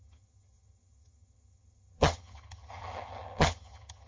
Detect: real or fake fake